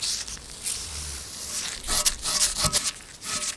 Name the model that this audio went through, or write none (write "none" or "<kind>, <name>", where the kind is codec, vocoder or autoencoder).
none